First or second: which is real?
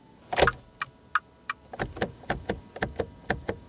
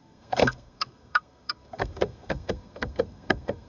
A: first